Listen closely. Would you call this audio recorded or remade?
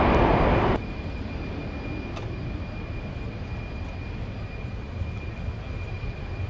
recorded